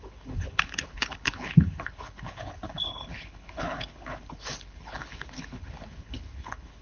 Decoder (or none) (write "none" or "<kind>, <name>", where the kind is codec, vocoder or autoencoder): codec, HILCodec